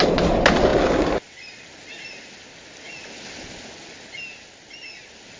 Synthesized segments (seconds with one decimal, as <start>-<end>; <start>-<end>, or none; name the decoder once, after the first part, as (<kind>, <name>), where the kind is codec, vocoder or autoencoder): none